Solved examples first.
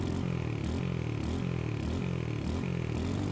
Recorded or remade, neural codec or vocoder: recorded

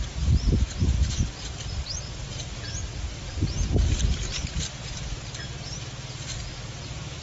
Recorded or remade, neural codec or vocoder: recorded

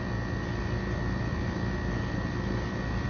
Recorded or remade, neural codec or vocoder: recorded